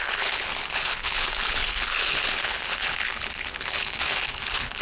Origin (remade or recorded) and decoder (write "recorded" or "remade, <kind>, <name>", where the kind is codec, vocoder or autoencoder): remade, codec, HILCodec